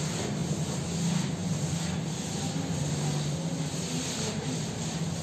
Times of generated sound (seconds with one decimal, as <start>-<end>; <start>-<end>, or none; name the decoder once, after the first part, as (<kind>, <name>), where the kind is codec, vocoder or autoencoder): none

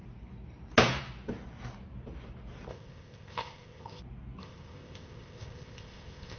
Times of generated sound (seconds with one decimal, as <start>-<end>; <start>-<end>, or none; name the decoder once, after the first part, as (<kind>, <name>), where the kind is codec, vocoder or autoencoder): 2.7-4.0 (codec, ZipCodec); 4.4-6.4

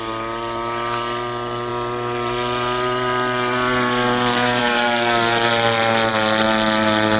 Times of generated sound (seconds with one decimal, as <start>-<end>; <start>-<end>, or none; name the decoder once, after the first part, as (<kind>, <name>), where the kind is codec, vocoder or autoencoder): none

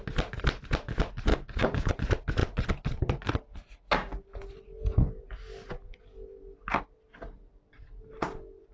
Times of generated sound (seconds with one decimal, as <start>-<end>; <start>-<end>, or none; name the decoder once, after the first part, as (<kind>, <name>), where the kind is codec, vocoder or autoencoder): 1.3-1.9 (codec, DAC)

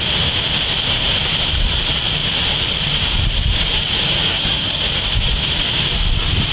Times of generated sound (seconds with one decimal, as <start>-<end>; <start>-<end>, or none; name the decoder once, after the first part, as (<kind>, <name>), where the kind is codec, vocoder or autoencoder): 4.3-4.8 (codec, SNAC)